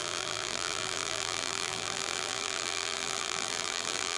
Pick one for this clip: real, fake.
fake